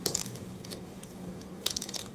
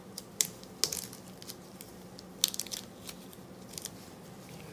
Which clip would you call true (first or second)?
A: second